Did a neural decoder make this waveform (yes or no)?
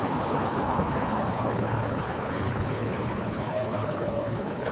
yes